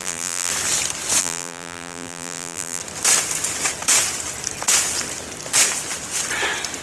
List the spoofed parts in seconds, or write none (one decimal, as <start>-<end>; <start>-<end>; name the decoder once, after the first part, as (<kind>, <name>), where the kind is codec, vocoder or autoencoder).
0.0-0.5 (vocoder, BigVGAN v2); 1.2-2.8